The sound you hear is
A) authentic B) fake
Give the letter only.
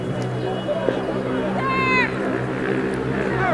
A